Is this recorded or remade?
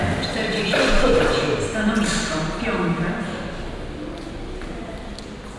recorded